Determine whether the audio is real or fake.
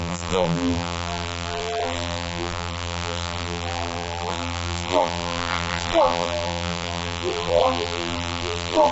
fake